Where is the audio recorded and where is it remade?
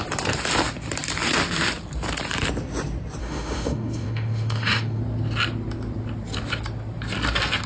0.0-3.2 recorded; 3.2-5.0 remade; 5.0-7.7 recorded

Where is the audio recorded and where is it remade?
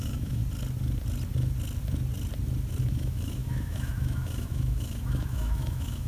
0.0-0.4 remade; 0.4-2.8 recorded; 2.8-6.1 remade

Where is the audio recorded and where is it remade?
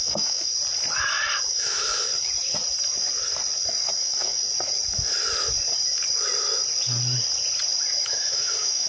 0.0-0.5 remade; 0.5-1.5 recorded; 1.5-2.1 remade; 2.1-4.0 recorded; 4.0-4.4 remade; 4.4-8.0 recorded; 8.0-8.9 remade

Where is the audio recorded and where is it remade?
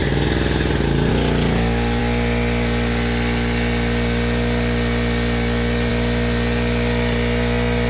0.0-7.9 recorded